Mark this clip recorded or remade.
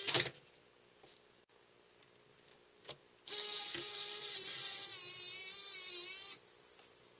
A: recorded